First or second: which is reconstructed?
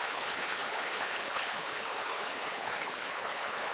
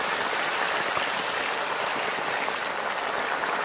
first